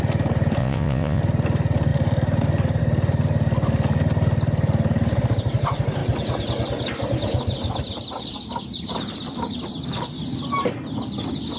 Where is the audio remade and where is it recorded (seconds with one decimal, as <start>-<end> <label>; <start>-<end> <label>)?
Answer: 0.0-0.6 recorded; 0.6-1.2 remade; 1.2-11.6 recorded